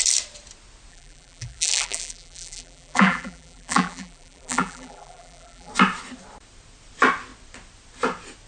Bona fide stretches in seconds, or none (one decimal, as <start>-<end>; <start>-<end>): 0.0-0.9; 5.7-8.5